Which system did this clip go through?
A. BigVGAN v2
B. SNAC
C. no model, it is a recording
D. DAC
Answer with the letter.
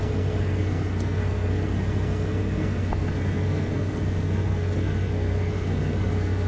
B